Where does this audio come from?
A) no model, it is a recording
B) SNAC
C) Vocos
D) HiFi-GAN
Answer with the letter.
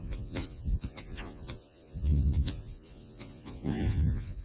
C